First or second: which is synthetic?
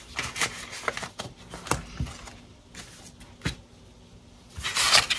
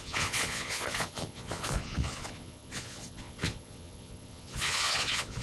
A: second